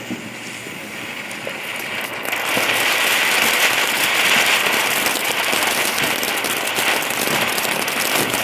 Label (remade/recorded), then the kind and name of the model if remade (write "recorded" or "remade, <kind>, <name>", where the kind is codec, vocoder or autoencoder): recorded